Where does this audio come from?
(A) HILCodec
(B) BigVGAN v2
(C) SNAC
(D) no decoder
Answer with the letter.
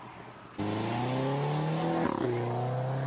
D